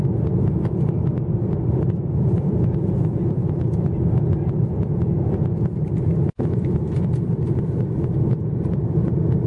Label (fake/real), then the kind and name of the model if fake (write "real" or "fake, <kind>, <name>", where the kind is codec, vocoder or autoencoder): fake, vocoder, BigVGAN v2